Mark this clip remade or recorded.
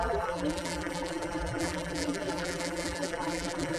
remade